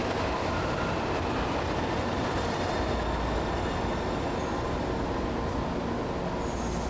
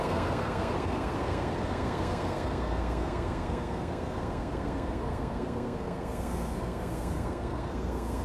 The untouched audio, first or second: first